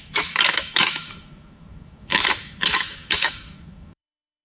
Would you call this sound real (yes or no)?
no